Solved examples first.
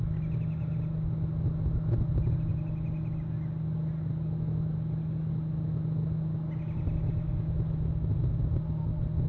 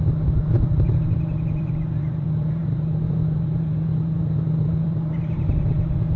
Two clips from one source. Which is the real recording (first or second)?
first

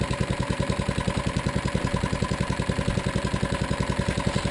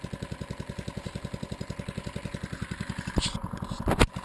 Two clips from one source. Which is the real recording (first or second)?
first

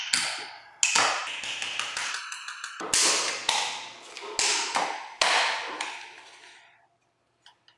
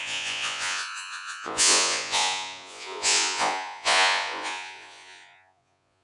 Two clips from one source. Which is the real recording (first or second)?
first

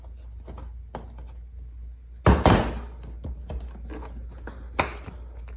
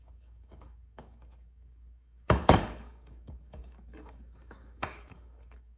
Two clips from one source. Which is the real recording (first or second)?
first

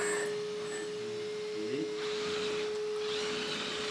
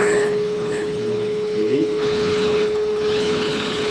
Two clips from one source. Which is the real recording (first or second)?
first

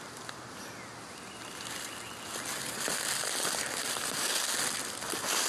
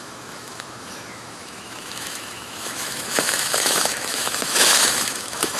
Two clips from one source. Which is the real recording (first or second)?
first